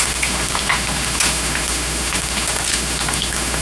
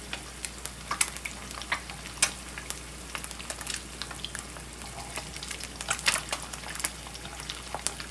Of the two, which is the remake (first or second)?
first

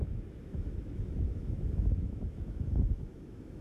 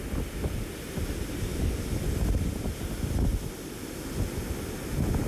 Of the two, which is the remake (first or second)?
first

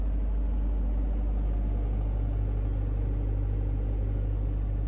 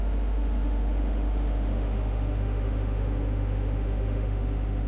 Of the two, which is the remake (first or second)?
second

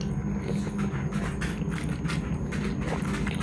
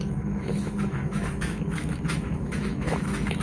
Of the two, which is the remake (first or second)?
second